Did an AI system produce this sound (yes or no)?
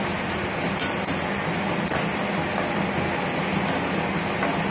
no